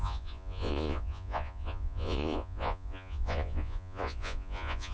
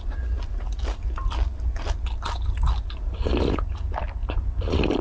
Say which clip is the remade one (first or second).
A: first